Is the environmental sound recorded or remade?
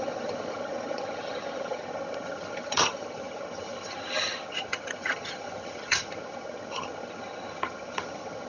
remade